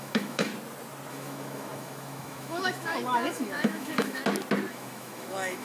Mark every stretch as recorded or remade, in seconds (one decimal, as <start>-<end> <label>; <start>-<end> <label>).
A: 0.0-0.5 remade; 0.5-1.1 recorded; 1.1-4.2 remade; 4.2-4.7 recorded; 4.7-5.6 remade